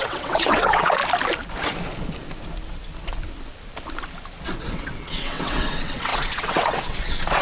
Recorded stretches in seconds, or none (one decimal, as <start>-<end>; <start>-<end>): 1.0-4.7